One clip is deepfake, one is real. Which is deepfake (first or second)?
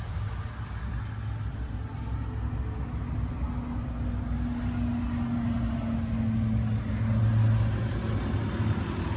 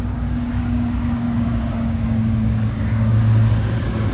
second